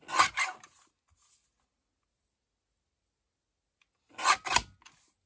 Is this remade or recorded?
recorded